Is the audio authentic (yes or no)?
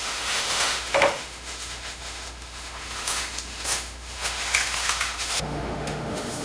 no